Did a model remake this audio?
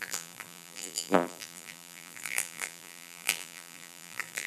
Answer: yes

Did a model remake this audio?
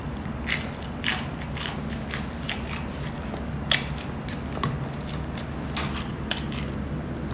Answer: no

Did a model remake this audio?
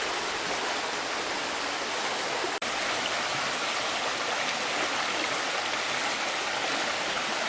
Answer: no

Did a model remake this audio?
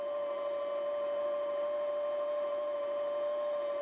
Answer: no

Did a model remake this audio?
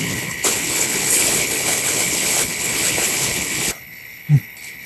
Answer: yes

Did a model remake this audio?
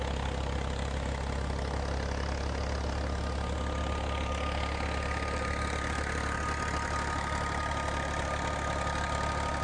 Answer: no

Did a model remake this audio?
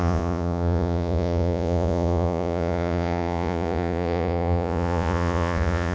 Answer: yes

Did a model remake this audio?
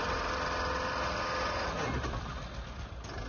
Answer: no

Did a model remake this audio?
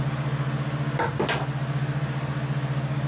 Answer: no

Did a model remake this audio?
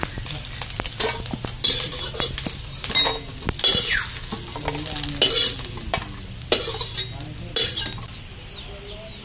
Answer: no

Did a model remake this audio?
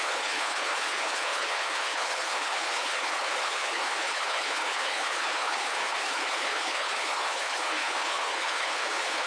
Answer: yes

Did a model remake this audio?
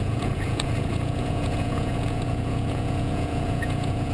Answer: yes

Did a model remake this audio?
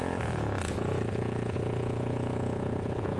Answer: yes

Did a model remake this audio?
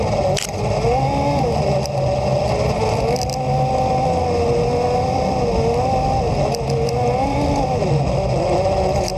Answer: no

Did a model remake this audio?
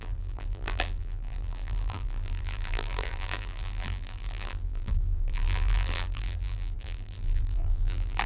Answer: yes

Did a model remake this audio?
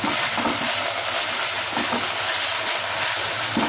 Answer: no